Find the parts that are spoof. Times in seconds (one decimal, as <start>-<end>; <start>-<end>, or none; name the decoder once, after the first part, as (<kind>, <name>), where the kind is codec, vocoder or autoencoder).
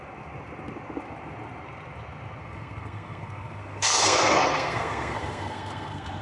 2.4-6.2 (codec, SNAC)